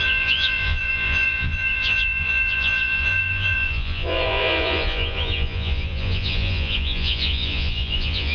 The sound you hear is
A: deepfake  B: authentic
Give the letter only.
A